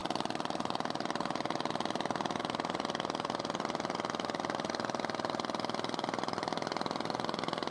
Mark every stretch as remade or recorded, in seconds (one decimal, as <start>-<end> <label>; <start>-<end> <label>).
0.0-7.7 recorded